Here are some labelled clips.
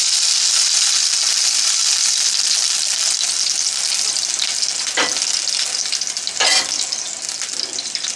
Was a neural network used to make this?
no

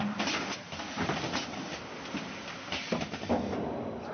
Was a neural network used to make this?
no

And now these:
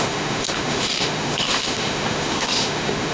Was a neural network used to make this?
yes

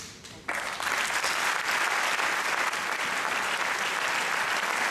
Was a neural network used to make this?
no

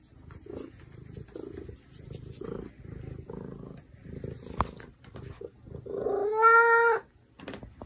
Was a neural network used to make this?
no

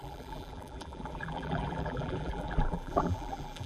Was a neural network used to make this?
yes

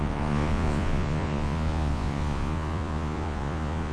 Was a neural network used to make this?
yes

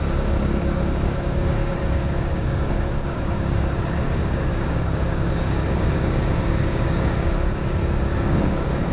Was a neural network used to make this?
yes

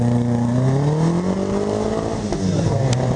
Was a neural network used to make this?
no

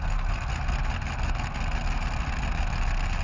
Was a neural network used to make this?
no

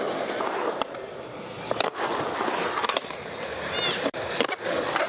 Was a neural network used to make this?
no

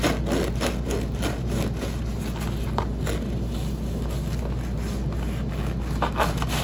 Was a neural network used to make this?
no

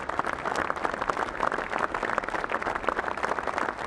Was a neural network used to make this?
no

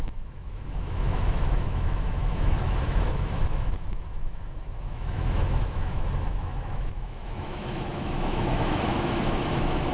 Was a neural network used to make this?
yes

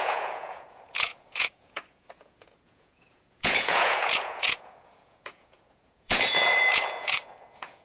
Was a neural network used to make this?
yes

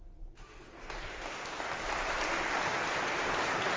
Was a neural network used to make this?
no